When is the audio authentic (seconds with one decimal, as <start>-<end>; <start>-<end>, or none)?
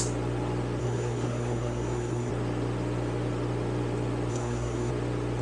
0.0-0.8; 2.3-4.3; 4.9-5.4